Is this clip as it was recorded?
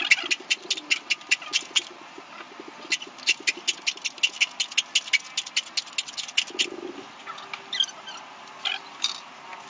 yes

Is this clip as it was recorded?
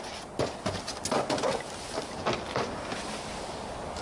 yes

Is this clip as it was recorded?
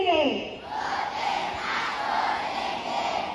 no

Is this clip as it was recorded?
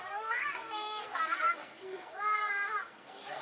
no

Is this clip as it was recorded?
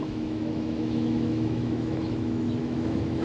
no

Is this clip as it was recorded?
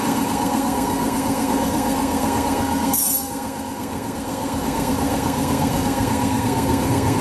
no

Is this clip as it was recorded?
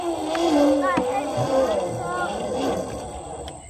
yes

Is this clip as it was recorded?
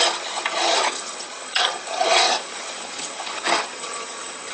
no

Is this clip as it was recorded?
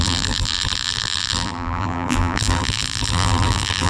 no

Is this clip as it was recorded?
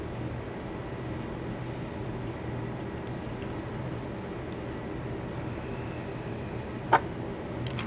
yes